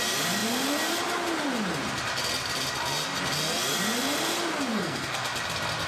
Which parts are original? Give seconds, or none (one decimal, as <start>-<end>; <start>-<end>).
0.0-4.7; 5.2-5.9